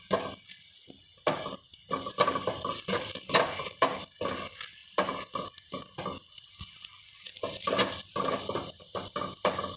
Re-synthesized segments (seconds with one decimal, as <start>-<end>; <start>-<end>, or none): none